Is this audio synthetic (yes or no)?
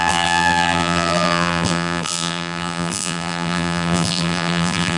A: yes